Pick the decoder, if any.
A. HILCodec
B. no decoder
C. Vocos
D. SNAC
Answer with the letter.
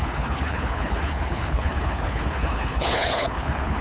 A